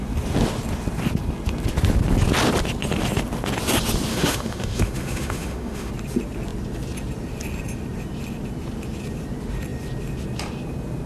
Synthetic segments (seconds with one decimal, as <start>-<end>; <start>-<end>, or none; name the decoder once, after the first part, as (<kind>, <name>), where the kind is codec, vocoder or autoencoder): 4.1-5.9 (autoencoder, DAC-VAE)